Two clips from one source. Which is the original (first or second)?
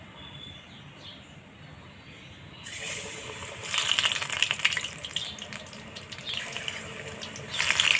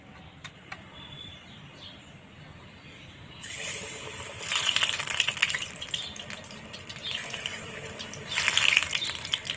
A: first